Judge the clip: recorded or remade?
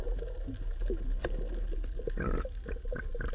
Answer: recorded